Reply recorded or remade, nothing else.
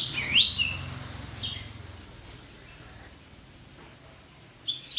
recorded